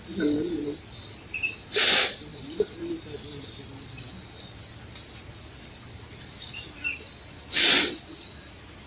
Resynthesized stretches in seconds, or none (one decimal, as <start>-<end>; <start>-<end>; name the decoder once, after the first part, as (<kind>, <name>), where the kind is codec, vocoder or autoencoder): none